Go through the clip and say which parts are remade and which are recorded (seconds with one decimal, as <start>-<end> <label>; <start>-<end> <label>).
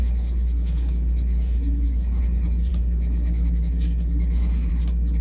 0.0-2.2 remade; 2.2-2.7 recorded; 2.7-4.7 remade; 4.7-5.2 recorded